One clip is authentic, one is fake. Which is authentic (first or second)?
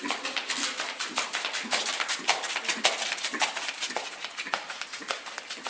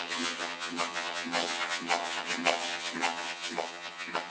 first